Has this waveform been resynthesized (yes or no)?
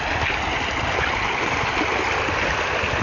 no